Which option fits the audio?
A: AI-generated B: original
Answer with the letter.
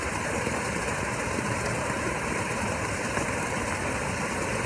B